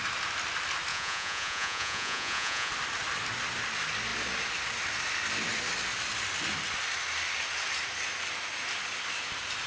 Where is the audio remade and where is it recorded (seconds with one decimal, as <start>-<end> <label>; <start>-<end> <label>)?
0.0-0.9 recorded; 0.9-2.7 remade; 2.7-9.7 recorded